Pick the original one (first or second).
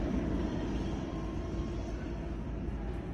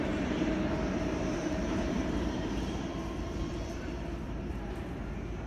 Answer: first